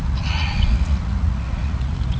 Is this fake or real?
fake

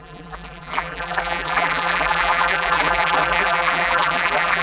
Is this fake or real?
fake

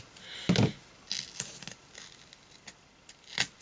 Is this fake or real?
real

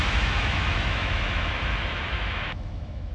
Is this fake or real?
fake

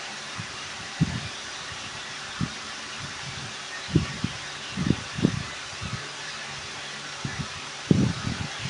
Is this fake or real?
fake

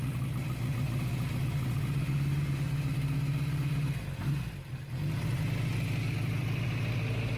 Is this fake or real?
real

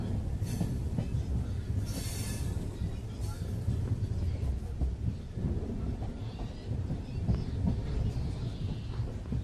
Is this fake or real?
real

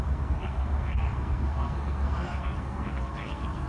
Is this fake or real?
fake